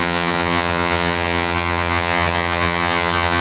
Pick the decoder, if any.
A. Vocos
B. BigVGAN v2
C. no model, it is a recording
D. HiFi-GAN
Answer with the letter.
D